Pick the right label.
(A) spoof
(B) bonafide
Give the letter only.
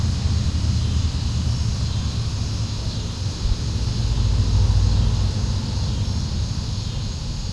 B